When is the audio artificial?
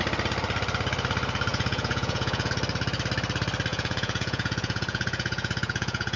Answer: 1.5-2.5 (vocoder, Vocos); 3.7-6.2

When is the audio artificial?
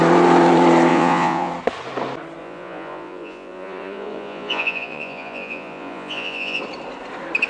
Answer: 0.9-1.5 (vocoder, Vocos); 2.4-6.6